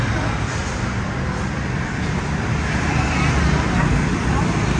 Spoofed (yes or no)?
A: no